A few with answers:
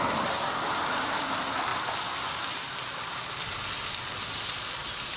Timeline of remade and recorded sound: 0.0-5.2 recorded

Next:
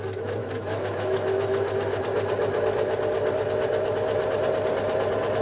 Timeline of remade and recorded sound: 0.0-0.4 recorded; 0.4-2.0 remade; 2.0-5.4 recorded

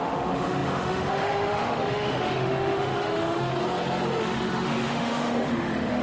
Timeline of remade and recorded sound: 0.0-3.5 remade; 3.5-4.2 recorded; 4.2-6.0 remade

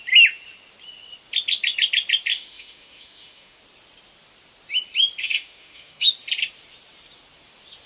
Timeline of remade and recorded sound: 0.0-2.3 recorded; 2.3-3.6 remade; 3.6-5.2 recorded; 5.2-6.1 remade; 6.1-7.9 recorded